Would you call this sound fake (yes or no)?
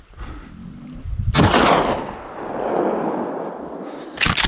no